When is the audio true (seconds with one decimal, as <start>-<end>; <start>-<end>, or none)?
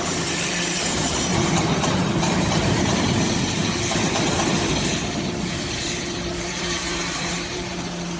3.6-5.2